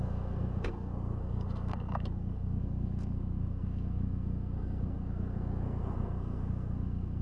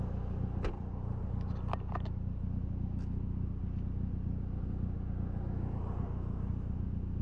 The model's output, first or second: first